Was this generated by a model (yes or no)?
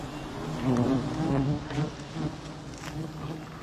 no